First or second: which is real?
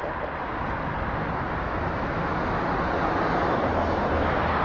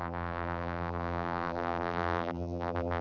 first